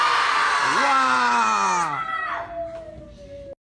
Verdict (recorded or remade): recorded